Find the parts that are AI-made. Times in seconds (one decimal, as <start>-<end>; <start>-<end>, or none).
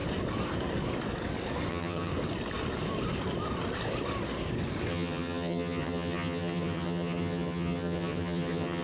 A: 1.7-2.1; 4.9-8.8